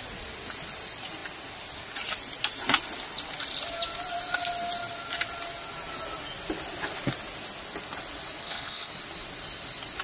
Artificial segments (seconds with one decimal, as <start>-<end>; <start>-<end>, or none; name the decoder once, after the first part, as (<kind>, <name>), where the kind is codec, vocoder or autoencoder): 8.4-8.9 (codec, HILCodec)